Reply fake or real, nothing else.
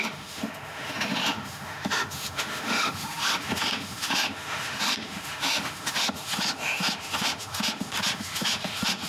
fake